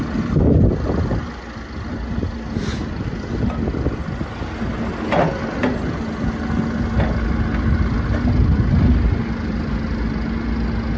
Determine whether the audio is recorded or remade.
recorded